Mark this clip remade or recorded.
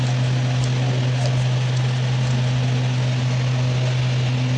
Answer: recorded